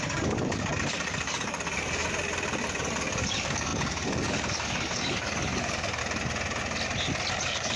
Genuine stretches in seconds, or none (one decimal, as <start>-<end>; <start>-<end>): 2.0-2.8; 6.0-7.3